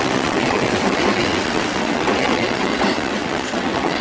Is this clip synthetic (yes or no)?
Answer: yes